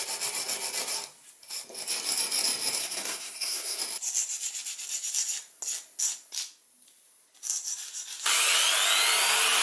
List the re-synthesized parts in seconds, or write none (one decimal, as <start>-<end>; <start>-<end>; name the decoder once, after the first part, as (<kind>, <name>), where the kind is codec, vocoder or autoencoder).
2.8-3.8 (codec, SNAC)

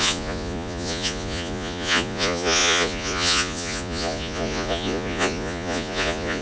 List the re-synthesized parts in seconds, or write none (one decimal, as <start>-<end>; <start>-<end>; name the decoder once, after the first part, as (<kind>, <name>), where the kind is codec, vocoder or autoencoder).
0.0-6.4 (vocoder, Vocos)

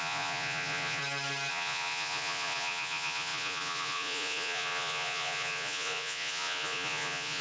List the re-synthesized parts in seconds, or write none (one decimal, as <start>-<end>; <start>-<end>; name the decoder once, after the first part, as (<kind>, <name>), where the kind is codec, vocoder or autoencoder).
0.0-1.0 (vocoder, Vocos); 1.5-7.4

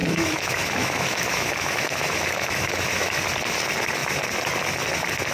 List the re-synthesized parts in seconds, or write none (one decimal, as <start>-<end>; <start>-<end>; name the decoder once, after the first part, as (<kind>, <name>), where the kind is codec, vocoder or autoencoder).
0.0-3.2 (autoencoder, DAC-VAE)

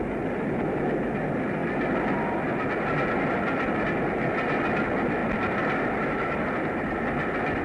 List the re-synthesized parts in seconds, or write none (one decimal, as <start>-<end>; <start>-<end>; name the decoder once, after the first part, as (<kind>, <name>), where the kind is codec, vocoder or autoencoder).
none

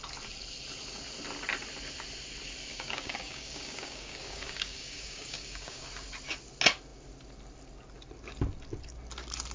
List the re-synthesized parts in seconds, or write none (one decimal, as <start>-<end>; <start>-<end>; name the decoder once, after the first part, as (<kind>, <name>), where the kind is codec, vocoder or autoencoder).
2.7-5.9 (codec, DAC)

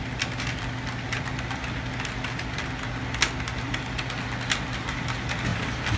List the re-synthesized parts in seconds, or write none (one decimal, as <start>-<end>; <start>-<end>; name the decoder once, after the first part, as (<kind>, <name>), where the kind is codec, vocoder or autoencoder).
none